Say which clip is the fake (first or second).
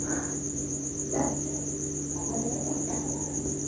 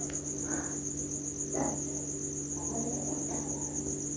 first